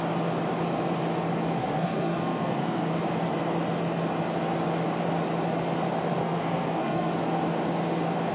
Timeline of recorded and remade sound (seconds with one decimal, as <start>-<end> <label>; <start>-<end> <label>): 0.0-1.6 recorded; 1.6-2.9 remade; 2.9-6.2 recorded; 6.2-7.1 remade; 7.1-8.3 recorded